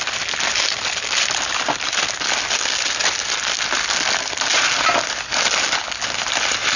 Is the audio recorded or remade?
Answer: recorded